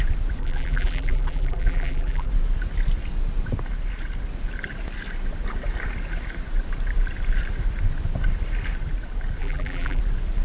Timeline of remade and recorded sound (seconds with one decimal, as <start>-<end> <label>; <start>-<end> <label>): 0.0-0.4 recorded; 0.4-2.3 remade; 2.3-9.4 recorded; 9.4-10.0 remade; 10.0-10.4 recorded